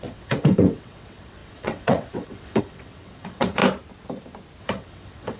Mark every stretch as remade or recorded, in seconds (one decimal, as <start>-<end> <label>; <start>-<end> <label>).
0.0-3.6 remade; 3.6-4.6 recorded; 4.6-5.4 remade